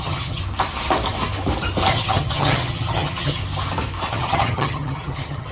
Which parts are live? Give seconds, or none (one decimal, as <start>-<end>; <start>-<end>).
0.4-1.9; 3.4-4.1